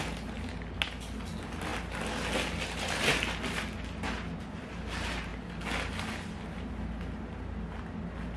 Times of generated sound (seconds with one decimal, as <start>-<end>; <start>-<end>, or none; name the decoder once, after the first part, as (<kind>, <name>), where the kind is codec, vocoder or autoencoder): none